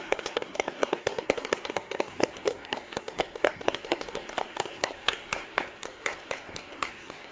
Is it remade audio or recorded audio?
remade